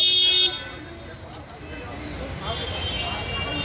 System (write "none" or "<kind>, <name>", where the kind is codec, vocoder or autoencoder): none